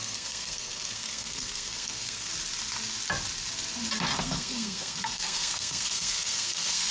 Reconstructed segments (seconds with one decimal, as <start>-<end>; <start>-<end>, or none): 0.0-2.3; 4.2-6.9